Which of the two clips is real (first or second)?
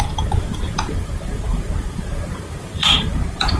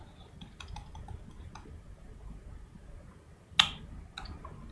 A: second